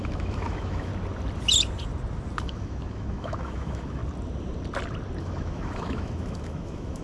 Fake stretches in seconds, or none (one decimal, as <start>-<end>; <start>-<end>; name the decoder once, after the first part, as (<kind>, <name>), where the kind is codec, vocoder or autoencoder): 0.0-0.9 (autoencoder, DAC-VAE); 2.4-4.0; 5.2-7.0